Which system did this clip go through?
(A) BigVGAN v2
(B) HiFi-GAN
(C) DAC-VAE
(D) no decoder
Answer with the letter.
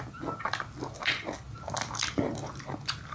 D